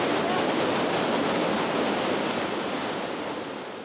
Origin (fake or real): real